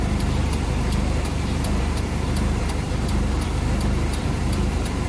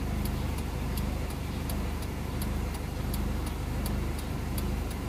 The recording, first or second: second